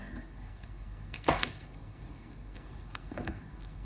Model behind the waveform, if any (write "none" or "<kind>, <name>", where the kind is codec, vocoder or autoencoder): codec, SNAC